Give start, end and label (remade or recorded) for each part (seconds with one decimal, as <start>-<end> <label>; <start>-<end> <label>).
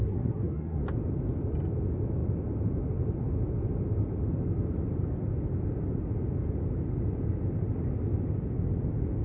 0.0-0.8 remade; 0.8-9.2 recorded